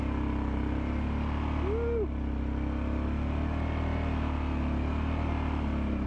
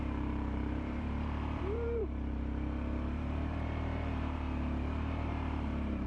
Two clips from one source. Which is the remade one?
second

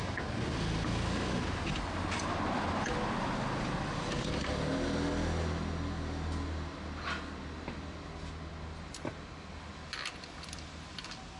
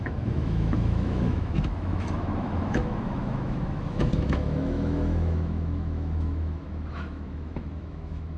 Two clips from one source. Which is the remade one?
second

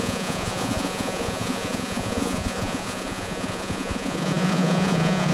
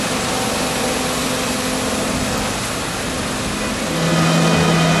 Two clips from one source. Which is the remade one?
first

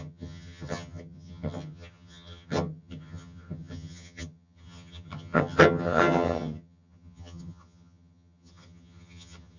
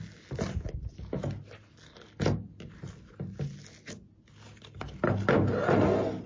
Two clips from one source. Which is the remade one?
first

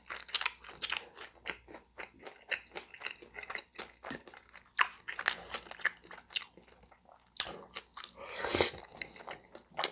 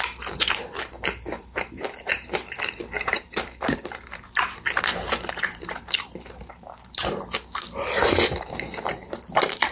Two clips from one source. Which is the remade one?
second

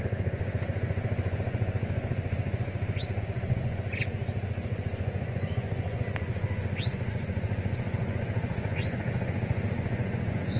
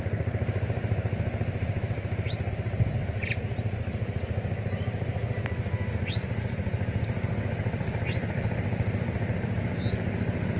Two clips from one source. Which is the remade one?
first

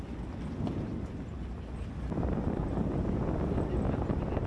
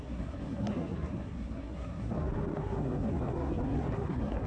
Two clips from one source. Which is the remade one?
second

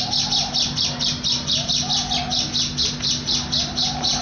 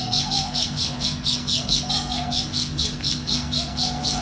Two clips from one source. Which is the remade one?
second